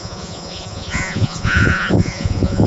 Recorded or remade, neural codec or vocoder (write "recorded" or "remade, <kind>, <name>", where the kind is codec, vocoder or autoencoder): remade, vocoder, Vocos